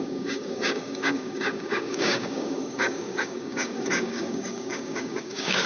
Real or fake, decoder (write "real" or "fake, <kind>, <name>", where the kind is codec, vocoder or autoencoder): fake, codec, DAC